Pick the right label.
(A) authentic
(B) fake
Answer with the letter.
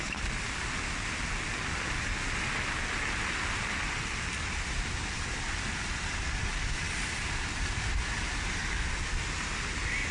A